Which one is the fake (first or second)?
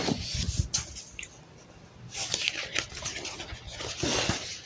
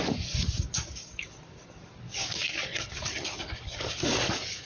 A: second